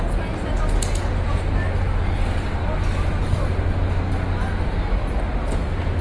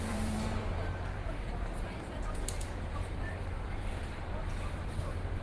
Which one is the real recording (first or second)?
first